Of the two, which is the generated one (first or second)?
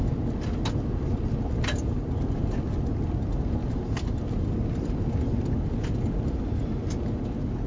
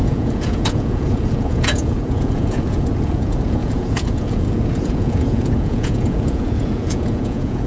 second